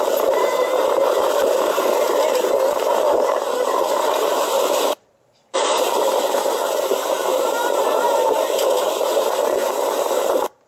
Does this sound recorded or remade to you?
remade